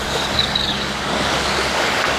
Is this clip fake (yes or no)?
yes